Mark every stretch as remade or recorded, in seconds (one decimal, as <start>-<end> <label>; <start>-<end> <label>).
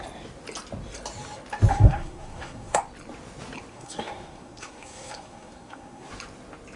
0.0-1.7 recorded; 1.7-2.8 remade; 2.8-3.7 recorded; 3.7-6.1 remade; 6.1-6.8 recorded